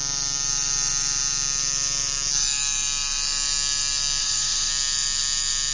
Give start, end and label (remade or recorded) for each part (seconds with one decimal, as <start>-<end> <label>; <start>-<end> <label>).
0.0-4.2 recorded; 4.2-4.7 remade; 4.7-5.7 recorded